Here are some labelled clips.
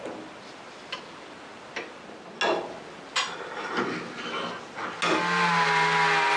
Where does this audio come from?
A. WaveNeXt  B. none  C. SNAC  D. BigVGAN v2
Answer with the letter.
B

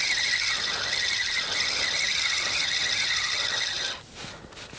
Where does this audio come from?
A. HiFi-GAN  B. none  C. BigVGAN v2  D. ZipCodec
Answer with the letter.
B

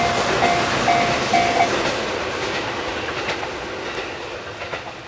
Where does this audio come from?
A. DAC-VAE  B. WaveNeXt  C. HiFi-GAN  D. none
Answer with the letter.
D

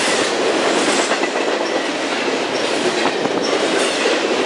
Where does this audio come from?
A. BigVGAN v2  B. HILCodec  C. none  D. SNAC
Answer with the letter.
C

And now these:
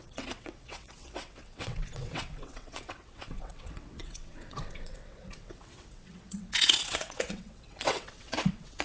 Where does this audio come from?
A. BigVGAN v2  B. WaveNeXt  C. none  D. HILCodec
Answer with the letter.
B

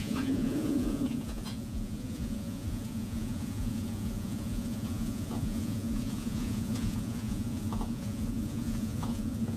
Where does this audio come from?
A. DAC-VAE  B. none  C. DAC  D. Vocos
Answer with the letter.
D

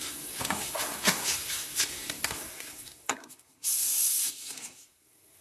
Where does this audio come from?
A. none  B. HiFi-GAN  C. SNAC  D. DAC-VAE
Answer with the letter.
C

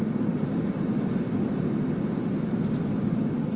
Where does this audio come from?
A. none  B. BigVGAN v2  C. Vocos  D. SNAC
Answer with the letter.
A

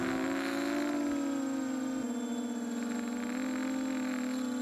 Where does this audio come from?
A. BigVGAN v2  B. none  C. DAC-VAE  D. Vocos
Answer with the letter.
B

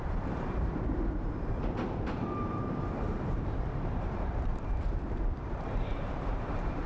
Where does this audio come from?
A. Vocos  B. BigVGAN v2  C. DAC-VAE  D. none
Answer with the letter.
B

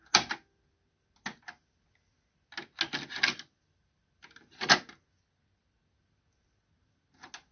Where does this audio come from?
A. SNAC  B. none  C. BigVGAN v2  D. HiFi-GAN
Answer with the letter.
B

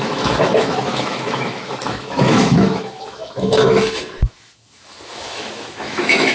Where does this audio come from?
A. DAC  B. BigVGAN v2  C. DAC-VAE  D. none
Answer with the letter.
C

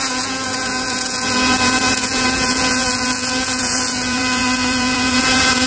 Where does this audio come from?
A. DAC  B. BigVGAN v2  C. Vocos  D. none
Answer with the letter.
C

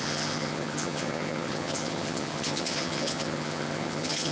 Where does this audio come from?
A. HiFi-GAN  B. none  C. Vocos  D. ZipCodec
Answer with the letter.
A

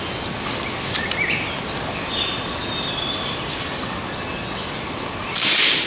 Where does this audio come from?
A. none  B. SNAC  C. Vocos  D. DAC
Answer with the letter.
A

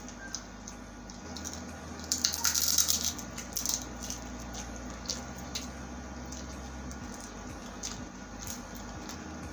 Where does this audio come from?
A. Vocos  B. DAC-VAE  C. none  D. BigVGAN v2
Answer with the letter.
C